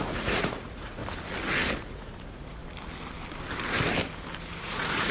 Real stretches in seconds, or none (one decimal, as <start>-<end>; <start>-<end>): 1.0-1.8; 2.6-4.6